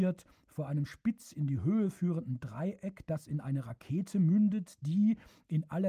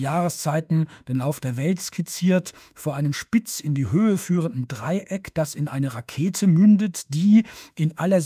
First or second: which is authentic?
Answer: first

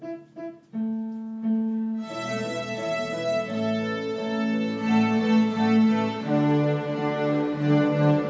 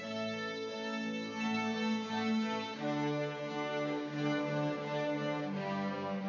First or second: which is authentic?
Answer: first